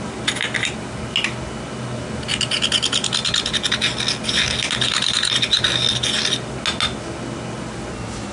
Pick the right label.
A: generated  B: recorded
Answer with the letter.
B